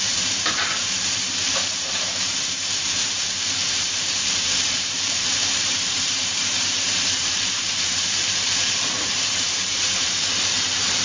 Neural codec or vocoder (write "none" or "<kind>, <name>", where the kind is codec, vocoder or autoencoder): vocoder, BigVGAN v2